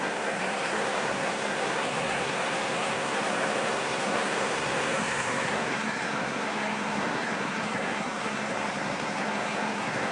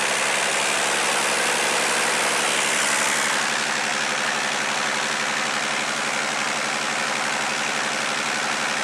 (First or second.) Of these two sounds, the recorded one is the second